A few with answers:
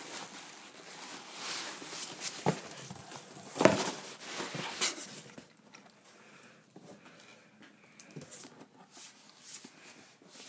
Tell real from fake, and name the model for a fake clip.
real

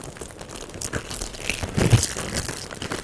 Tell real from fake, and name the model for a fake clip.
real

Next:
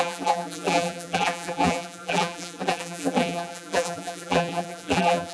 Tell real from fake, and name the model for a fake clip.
fake, vocoder, BigVGAN v2